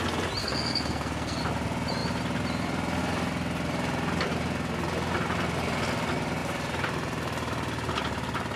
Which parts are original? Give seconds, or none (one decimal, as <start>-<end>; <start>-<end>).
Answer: 0.0-0.4; 1.4-8.6